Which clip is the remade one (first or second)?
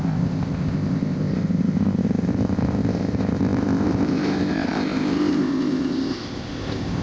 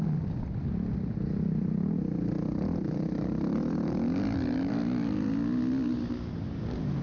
first